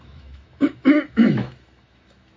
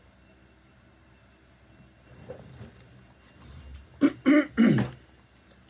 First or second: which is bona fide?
second